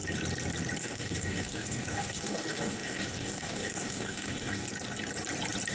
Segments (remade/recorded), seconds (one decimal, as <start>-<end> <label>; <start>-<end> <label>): 0.0-0.8 recorded; 0.8-4.7 remade; 4.7-5.7 recorded